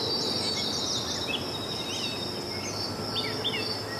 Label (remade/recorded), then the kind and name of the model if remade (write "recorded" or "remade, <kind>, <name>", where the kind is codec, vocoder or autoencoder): recorded